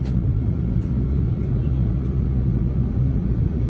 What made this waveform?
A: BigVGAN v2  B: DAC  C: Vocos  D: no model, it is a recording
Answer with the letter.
C